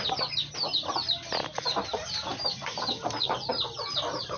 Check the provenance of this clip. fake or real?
real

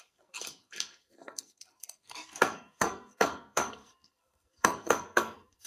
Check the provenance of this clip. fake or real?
fake